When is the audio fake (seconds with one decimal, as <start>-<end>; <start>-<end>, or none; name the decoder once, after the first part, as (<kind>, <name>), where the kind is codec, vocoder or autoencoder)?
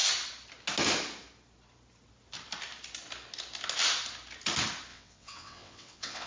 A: 4.9-6.3 (vocoder, WaveNeXt)